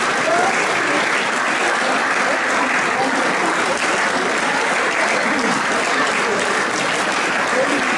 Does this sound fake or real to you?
real